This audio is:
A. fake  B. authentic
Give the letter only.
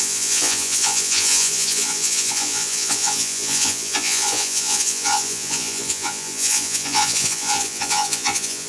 A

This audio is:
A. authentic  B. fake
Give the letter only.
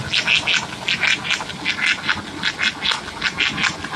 A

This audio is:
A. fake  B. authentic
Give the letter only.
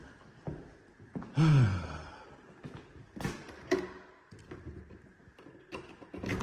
B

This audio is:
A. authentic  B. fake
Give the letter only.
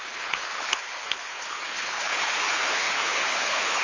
B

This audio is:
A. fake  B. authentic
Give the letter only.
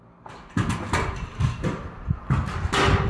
B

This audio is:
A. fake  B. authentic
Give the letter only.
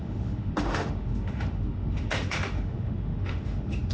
A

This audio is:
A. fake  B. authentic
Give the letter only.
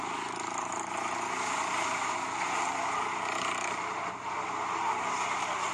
B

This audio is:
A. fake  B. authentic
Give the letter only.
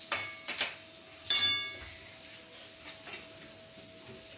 B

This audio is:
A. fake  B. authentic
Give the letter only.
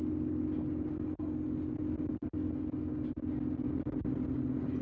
B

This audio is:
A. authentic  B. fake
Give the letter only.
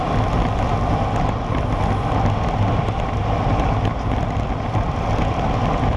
A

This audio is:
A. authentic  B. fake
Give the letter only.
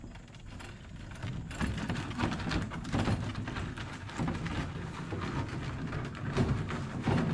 A